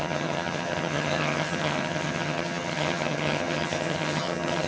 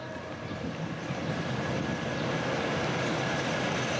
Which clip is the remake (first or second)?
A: first